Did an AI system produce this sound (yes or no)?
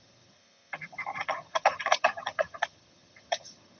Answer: yes